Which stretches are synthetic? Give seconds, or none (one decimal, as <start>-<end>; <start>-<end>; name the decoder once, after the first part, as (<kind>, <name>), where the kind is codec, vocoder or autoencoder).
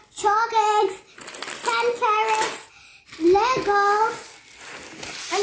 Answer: none